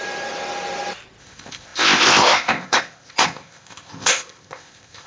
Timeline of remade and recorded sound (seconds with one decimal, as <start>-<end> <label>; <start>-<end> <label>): 0.0-1.2 recorded; 1.2-5.1 remade